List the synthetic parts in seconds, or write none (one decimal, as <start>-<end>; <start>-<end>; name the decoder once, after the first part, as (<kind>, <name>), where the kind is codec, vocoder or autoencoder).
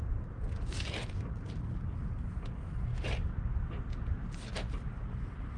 none